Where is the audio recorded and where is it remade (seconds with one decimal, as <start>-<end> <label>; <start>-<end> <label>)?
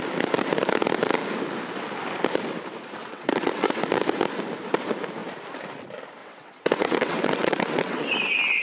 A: 0.0-3.0 recorded; 3.0-3.8 remade; 3.8-6.2 recorded; 6.2-8.1 remade; 8.1-8.6 recorded